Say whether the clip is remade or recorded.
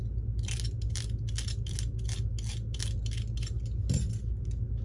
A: recorded